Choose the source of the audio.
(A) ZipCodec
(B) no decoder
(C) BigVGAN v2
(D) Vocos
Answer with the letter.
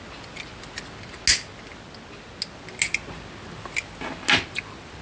B